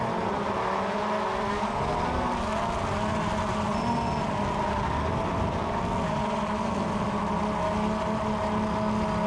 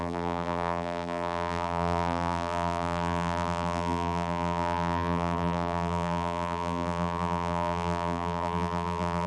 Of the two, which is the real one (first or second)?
first